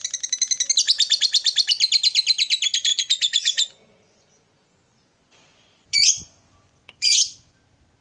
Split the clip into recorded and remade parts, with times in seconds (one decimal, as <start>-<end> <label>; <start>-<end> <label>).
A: 0.0-2.9 recorded; 2.9-7.6 remade; 7.6-8.0 recorded